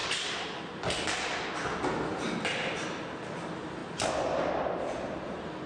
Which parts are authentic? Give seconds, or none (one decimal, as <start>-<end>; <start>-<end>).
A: 0.6-5.7